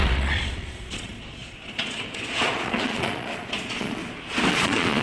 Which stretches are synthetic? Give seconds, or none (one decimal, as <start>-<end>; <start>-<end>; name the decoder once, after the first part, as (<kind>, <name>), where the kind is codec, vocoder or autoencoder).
0.0-4.0 (vocoder, Vocos); 4.5-5.0